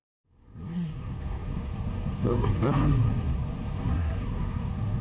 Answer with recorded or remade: remade